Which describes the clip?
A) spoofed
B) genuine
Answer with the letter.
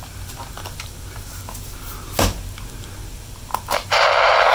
B